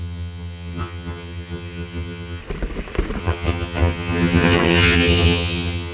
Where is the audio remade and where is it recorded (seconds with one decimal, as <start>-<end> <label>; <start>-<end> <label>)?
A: 0.0-2.4 remade; 2.4-3.2 recorded; 3.2-5.9 remade